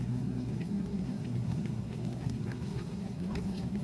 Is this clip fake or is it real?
fake